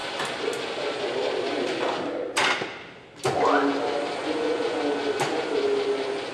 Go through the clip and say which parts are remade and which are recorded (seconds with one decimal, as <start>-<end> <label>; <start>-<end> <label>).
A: 0.0-4.2 recorded; 4.2-4.8 remade; 4.8-6.3 recorded